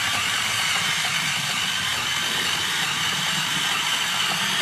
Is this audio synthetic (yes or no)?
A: yes